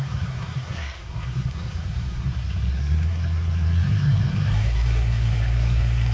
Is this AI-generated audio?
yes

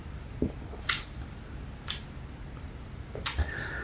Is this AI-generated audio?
no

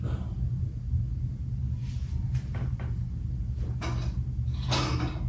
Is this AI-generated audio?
no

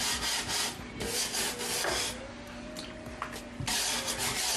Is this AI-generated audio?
no